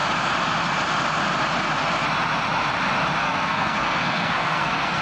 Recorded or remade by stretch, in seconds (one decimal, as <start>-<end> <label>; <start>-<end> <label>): 0.0-3.2 recorded; 3.2-5.0 remade